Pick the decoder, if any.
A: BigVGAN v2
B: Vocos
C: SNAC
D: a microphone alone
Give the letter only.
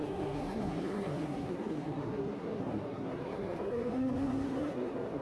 C